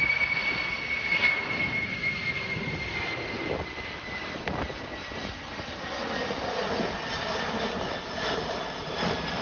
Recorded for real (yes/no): no